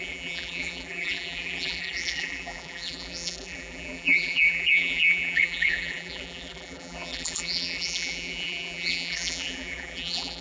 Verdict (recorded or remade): remade